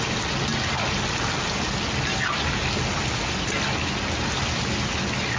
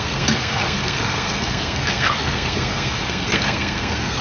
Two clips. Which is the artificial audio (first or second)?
second